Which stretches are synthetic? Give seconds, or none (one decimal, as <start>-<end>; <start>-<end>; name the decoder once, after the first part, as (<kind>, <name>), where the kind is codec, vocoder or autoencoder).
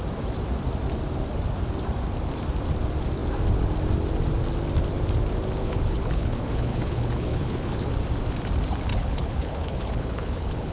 5.6-7.9 (codec, HILCodec); 8.9-10.7